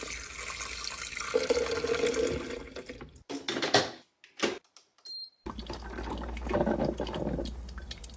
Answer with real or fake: real